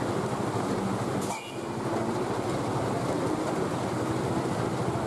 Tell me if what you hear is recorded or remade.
recorded